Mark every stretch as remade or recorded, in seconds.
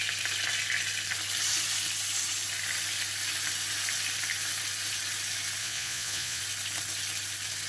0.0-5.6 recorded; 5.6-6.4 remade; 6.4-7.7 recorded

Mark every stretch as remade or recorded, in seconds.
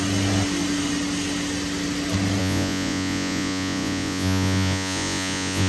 0.0-2.4 recorded; 2.4-5.7 remade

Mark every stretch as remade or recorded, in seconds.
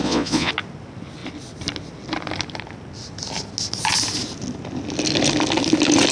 0.0-0.5 remade; 0.5-6.1 recorded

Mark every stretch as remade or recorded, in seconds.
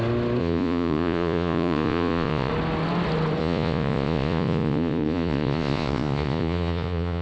0.0-0.4 recorded; 0.4-2.5 remade; 2.5-3.4 recorded; 3.4-7.2 remade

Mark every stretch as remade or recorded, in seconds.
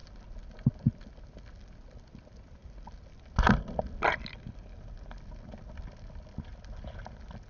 0.0-7.5 recorded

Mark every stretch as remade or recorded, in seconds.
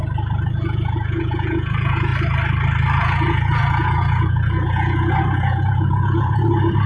0.0-0.5 recorded; 0.5-2.1 remade; 2.1-3.0 recorded; 3.0-6.9 remade